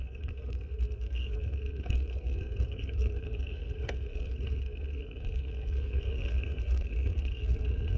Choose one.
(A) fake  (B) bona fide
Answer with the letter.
A